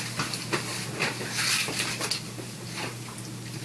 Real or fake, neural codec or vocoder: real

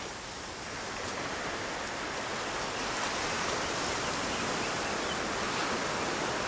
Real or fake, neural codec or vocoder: real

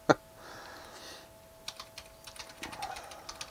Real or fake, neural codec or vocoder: real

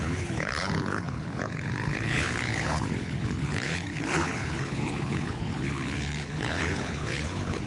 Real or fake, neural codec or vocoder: fake, codec, HILCodec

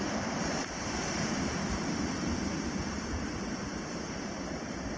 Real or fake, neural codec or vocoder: fake, vocoder, BigVGAN v2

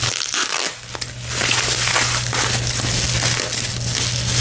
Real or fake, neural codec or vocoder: real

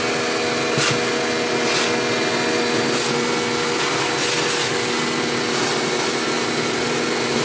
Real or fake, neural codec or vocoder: real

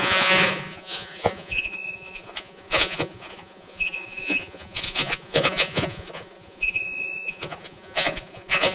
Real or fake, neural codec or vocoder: fake, vocoder, Vocos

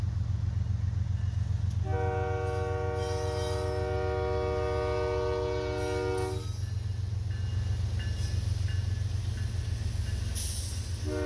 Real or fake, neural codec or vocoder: real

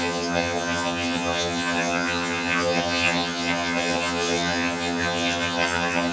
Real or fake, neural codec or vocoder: fake, vocoder, HiFi-GAN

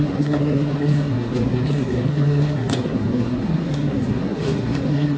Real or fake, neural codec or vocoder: fake, codec, SNAC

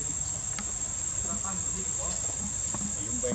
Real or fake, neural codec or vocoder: real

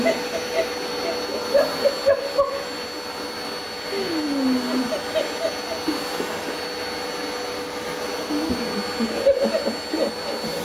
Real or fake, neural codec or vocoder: real